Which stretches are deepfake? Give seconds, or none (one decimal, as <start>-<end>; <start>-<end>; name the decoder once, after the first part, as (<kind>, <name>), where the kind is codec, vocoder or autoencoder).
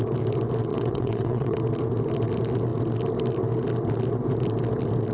0.7-1.6 (vocoder, WaveNeXt)